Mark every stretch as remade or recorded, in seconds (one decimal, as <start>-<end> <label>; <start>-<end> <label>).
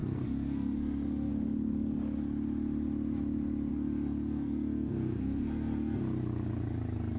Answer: 0.0-1.3 remade; 1.3-3.7 recorded; 3.7-6.0 remade; 6.0-7.2 recorded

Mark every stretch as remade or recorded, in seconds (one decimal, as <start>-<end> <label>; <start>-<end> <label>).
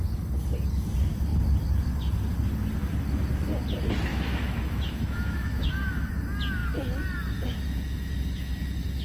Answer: 0.0-4.1 recorded; 4.1-6.1 remade; 6.1-9.0 recorded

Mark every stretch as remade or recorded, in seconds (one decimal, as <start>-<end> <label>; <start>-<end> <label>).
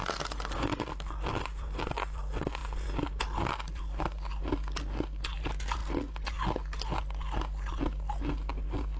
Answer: 0.0-9.0 recorded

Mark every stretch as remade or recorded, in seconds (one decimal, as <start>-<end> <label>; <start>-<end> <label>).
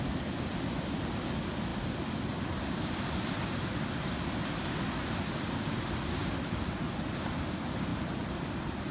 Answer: 0.0-1.7 recorded; 1.7-3.9 remade; 3.9-7.9 recorded; 7.9-8.9 remade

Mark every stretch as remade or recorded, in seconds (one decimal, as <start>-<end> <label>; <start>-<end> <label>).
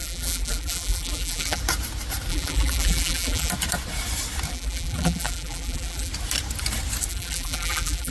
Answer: 0.0-1.6 remade; 1.6-2.3 recorded; 2.3-3.5 remade; 3.5-4.5 recorded; 4.5-6.1 remade; 6.1-7.1 recorded; 7.1-8.1 remade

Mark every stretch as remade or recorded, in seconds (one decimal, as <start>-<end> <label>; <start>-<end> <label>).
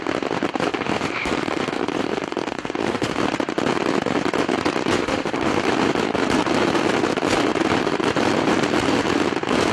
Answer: 0.0-0.7 recorded; 0.7-3.2 remade; 3.2-5.0 recorded; 5.0-5.5 remade; 5.5-9.7 recorded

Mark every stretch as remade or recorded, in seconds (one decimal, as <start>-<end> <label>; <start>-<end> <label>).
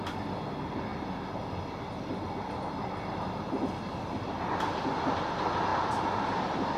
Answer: 0.0-6.8 recorded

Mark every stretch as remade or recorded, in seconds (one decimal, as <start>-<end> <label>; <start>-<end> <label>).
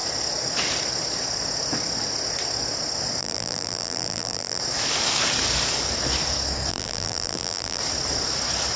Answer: 0.0-3.2 recorded; 3.2-4.6 remade; 4.6-6.7 recorded; 6.7-7.8 remade; 7.8-8.8 recorded